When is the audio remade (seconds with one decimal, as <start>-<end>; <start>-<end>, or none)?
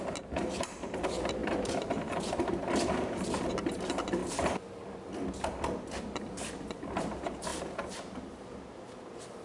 0.0-4.2; 7.0-9.4